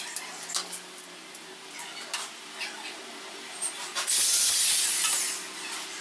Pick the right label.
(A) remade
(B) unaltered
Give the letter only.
B